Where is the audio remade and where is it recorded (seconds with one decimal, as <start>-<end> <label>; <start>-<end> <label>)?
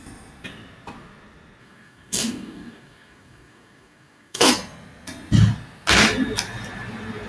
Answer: 0.0-1.6 recorded; 1.6-4.5 remade; 4.5-7.3 recorded